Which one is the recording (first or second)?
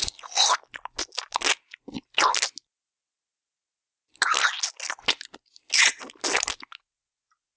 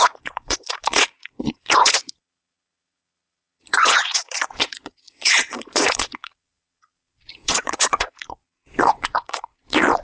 first